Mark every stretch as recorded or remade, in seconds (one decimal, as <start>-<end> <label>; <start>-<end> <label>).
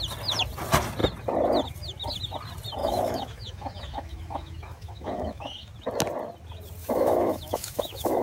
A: 0.0-2.8 recorded; 2.8-5.7 remade; 5.7-6.8 recorded; 6.8-8.2 remade